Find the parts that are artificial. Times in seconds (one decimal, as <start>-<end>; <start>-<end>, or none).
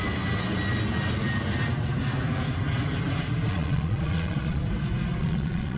3.5-4.6; 5.2-5.8